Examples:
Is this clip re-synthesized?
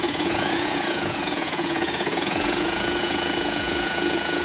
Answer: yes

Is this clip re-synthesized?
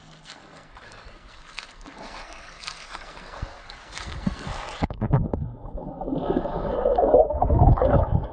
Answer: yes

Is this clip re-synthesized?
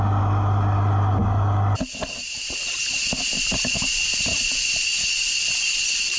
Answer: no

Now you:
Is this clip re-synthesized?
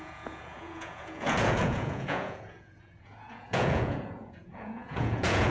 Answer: yes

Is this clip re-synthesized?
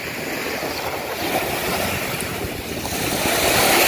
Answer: no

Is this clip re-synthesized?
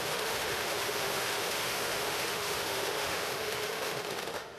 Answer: yes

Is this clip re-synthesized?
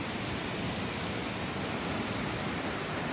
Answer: no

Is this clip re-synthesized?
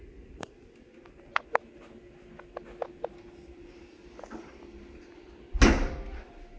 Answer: no